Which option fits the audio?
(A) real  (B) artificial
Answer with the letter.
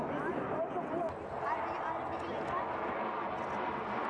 A